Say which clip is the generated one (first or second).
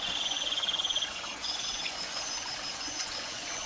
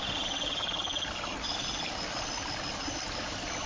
first